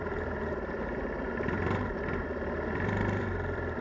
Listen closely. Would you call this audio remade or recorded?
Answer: remade